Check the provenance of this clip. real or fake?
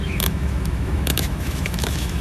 fake